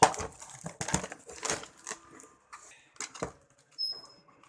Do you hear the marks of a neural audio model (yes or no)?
no